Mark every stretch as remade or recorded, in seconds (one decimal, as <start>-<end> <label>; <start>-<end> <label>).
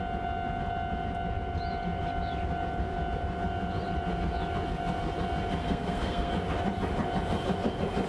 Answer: 0.0-5.6 recorded; 5.6-6.3 remade; 6.3-8.1 recorded